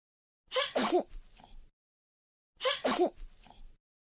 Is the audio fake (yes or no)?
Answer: no